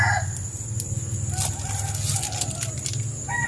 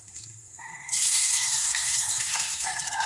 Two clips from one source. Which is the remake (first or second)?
second